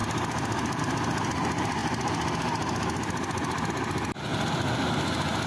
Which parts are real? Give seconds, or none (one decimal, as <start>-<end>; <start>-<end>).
0.8-4.3; 4.9-5.5